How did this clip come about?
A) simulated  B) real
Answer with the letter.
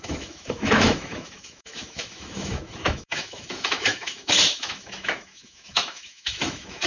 A